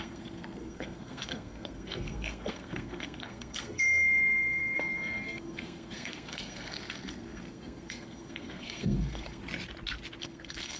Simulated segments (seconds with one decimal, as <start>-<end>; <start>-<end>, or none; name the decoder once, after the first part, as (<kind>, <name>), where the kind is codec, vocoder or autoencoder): 0.0-9.4 (codec, SNAC); 10.2-10.8